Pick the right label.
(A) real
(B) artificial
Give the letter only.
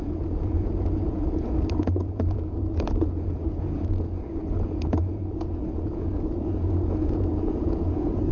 B